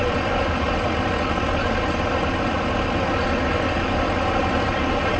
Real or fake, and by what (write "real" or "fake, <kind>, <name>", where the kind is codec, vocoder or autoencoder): real